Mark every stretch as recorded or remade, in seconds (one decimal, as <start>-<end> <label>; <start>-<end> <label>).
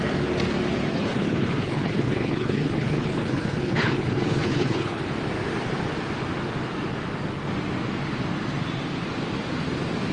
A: 0.0-0.9 recorded; 0.9-5.0 remade; 5.0-10.1 recorded